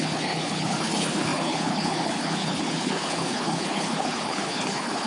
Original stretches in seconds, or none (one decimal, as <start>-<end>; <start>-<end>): none